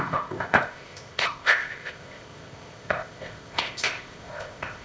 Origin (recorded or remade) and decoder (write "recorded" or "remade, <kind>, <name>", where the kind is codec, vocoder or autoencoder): remade, codec, ZipCodec